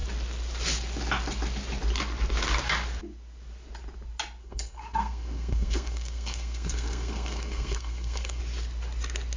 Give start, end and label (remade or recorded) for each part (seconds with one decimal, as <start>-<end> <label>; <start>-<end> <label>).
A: 0.0-4.4 recorded; 4.4-8.4 remade; 8.4-9.4 recorded